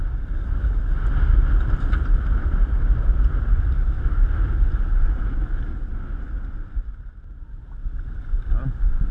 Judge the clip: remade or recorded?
recorded